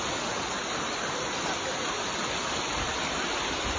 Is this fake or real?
real